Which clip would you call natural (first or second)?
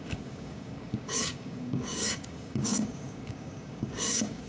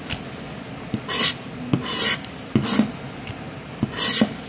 second